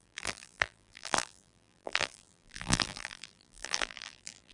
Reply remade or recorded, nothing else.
remade